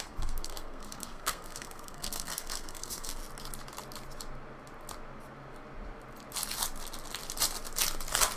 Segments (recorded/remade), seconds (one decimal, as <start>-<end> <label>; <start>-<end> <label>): 0.0-3.2 remade; 3.2-8.4 recorded